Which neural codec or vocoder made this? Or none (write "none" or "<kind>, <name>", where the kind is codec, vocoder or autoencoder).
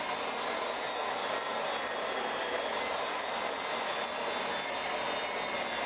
none